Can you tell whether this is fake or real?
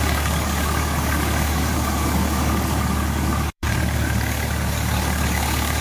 fake